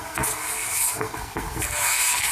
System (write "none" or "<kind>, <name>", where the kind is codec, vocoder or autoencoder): codec, SNAC